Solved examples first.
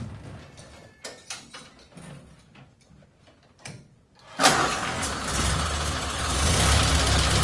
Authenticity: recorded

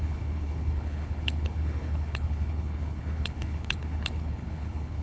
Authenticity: remade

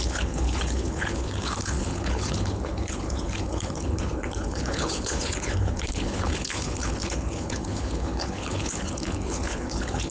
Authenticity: remade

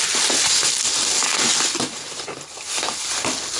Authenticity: recorded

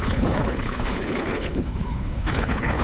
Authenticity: remade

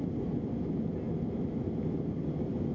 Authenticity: recorded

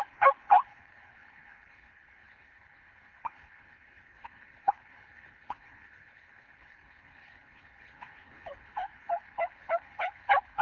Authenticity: remade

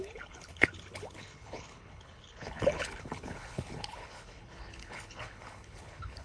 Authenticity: remade